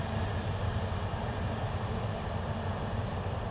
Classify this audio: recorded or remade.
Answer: recorded